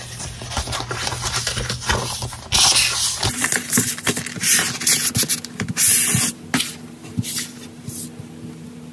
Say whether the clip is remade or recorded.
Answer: recorded